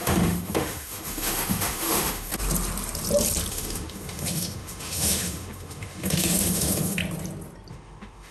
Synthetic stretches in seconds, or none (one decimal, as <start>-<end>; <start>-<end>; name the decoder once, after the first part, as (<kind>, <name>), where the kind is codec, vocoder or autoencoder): 0.0-2.3 (autoencoder, DAC-VAE); 3.5-7.0; 7.7-8.3